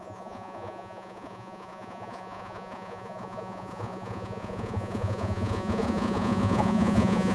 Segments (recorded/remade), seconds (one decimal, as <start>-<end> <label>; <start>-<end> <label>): 0.0-7.3 remade